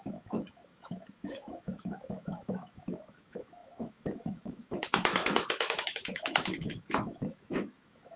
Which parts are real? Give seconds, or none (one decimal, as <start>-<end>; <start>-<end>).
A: none